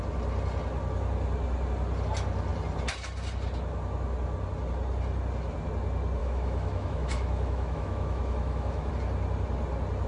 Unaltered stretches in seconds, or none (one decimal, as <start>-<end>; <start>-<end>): 0.0-6.2; 8.9-10.1